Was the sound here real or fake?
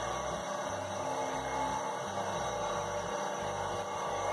real